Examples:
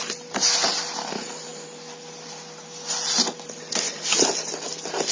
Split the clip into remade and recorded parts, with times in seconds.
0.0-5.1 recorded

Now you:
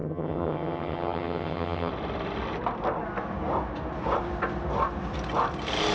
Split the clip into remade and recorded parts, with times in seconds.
0.0-1.9 remade; 1.9-5.9 recorded

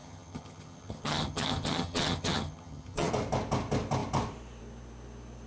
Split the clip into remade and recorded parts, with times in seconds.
0.0-3.1 remade; 3.1-5.5 recorded

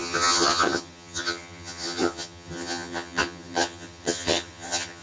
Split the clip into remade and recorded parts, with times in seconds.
0.0-5.0 remade

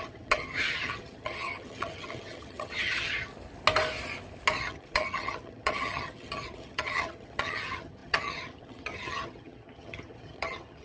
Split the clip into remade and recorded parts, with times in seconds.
0.0-3.3 remade; 3.3-4.6 recorded; 4.6-10.8 remade